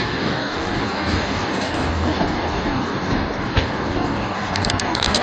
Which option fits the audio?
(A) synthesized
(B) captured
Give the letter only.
A